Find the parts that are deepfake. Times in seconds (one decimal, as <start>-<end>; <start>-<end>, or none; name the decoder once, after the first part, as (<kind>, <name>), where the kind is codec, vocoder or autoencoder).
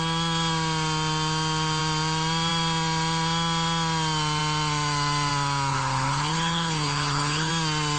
5.7-7.5 (codec, HILCodec)